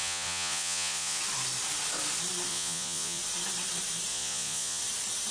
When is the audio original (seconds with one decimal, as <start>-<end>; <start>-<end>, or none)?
1.2-2.5; 3.2-4.1; 4.8-5.3